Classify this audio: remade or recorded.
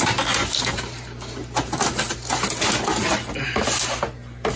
recorded